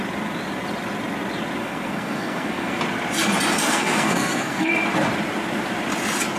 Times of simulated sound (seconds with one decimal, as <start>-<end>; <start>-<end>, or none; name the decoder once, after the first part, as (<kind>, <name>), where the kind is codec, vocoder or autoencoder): 1.6-2.8 (codec, SNAC); 3.6-4.7

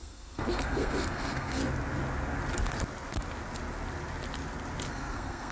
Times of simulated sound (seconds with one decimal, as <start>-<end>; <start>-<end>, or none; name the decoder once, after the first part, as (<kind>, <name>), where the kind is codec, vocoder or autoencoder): 0.0-1.6 (codec, SNAC); 4.9-5.5

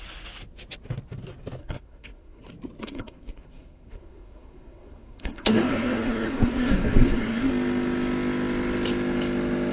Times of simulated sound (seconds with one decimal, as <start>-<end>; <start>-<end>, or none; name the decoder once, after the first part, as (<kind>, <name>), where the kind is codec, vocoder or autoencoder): 1.6-2.4 (codec, SNAC); 2.8-7.5